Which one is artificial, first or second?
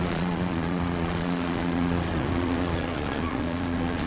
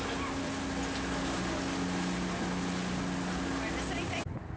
first